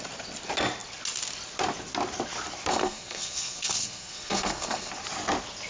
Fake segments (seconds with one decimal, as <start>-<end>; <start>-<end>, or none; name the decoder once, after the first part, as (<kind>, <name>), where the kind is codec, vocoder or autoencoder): 2.7-4.9 (codec, SNAC)